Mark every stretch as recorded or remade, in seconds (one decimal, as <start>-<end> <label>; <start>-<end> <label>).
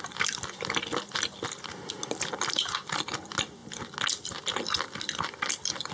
0.0-5.9 recorded